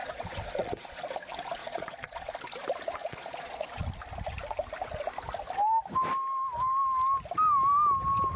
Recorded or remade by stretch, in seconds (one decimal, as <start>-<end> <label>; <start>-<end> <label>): 0.0-1.0 remade; 1.0-1.6 recorded; 1.6-2.3 remade; 2.3-3.0 recorded; 3.0-3.9 remade; 3.9-8.4 recorded